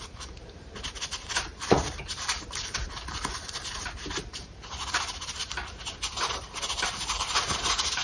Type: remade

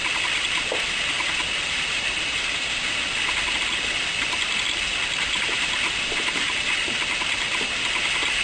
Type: recorded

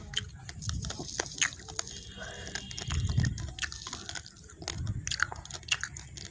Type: recorded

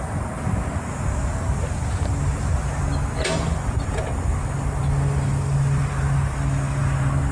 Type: recorded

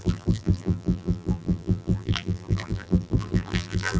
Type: remade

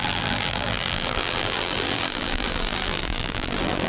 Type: remade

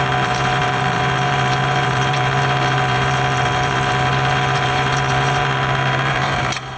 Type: remade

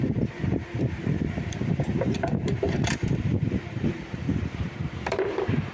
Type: remade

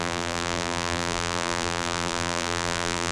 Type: remade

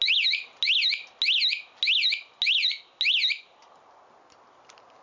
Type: recorded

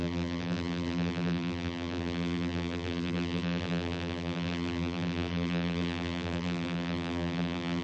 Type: remade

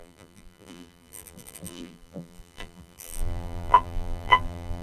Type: remade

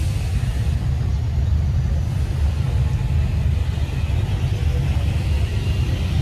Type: recorded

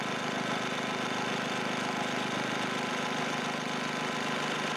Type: recorded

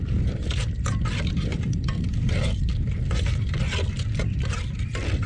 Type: recorded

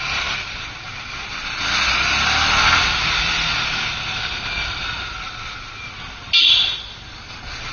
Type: recorded